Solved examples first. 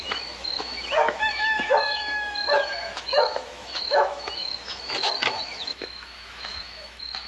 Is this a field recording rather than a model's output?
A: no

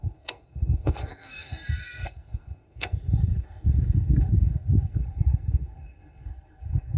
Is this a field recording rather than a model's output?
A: no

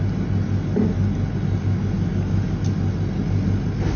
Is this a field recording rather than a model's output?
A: yes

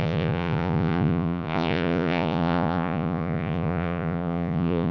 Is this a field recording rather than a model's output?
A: no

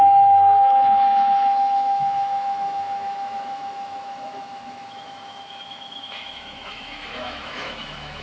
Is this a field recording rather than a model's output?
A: no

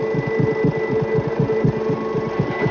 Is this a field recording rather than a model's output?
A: yes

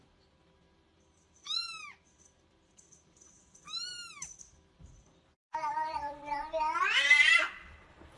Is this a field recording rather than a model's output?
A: no